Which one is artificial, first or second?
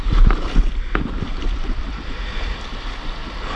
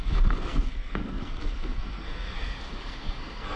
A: second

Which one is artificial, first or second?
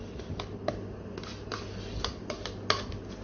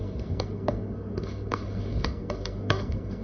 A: second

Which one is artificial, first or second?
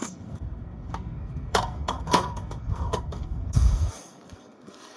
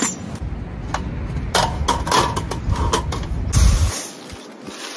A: first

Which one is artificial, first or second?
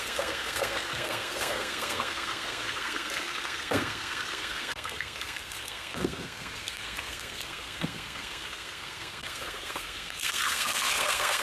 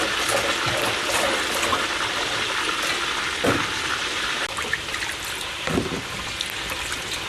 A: first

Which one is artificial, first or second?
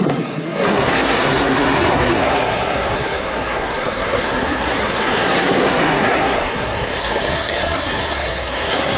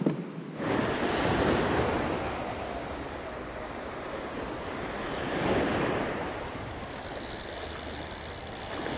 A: first